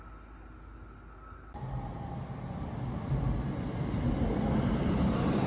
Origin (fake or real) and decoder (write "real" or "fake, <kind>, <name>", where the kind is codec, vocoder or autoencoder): real